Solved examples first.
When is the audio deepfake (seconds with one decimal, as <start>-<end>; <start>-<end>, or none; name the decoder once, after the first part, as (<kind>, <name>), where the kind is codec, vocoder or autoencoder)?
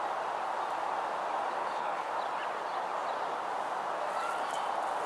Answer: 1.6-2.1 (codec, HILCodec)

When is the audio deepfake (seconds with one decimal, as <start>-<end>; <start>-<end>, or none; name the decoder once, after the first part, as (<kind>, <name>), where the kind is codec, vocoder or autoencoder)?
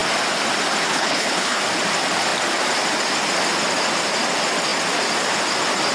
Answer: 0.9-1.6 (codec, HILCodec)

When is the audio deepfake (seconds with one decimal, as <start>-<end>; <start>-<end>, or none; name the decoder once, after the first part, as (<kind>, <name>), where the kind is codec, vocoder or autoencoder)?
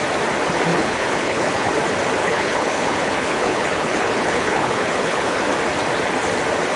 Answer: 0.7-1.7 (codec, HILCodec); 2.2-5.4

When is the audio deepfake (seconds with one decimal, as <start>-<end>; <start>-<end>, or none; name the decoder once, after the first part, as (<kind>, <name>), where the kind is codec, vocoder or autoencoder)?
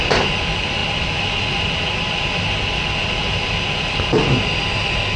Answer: none